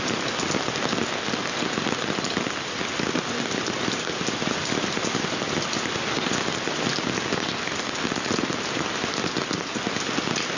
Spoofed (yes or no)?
no